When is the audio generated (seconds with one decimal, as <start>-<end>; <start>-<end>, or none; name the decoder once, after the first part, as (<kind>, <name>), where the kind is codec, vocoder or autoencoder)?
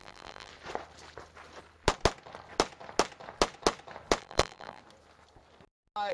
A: 0.0-0.5 (vocoder, BigVGAN v2); 4.2-4.8